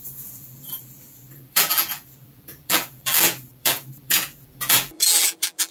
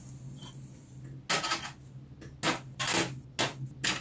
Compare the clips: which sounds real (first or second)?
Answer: second